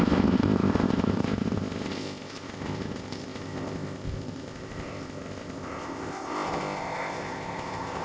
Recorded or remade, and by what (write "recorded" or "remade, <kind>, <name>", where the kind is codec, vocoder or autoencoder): remade, codec, ZipCodec